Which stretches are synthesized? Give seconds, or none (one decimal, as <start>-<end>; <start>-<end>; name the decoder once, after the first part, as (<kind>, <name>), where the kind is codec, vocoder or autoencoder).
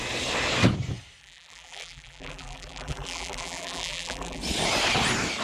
1.2-4.4 (vocoder, BigVGAN v2)